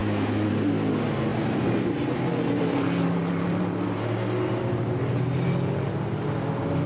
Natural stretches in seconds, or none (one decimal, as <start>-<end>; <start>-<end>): 0.5-6.9